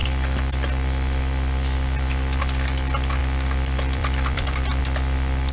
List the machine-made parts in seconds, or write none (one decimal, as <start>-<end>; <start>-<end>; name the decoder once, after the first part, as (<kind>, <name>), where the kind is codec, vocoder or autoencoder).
3.2-4.8 (vocoder, BigVGAN v2)